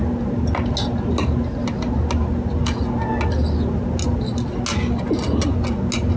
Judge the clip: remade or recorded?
recorded